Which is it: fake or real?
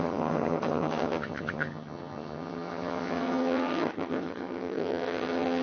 fake